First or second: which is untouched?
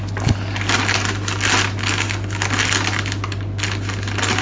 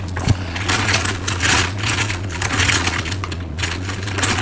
first